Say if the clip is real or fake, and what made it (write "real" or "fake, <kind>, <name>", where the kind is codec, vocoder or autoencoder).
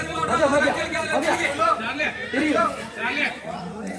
fake, vocoder, Vocos